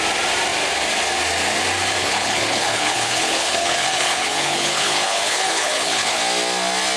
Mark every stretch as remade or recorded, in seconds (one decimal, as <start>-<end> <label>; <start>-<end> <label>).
0.0-2.0 recorded; 2.0-6.2 remade; 6.2-7.0 recorded